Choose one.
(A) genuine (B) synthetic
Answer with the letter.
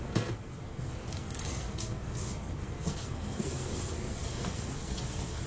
B